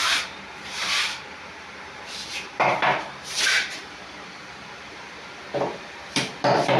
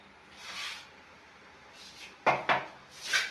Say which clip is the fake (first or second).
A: first